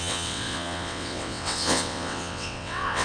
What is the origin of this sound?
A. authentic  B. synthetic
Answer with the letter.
B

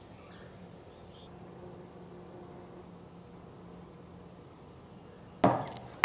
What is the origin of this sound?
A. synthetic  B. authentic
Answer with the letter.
B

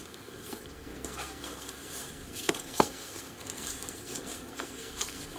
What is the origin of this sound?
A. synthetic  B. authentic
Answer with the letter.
A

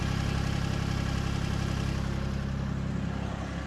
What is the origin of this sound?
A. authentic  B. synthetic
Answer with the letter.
A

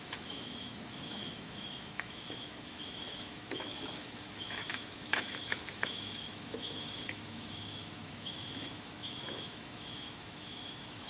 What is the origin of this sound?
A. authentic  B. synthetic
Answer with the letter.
B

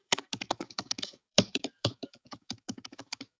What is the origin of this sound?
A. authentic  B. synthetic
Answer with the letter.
B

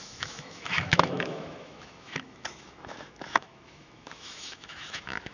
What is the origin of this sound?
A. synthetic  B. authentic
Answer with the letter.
A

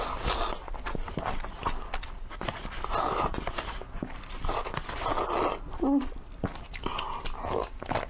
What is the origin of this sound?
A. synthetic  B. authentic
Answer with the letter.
B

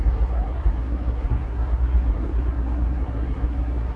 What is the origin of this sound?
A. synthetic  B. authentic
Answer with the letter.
A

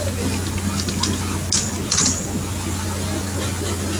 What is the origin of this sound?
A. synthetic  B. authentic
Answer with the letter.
B